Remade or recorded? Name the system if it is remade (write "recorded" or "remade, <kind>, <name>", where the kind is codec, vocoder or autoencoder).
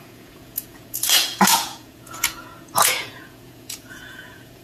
remade, vocoder, Vocos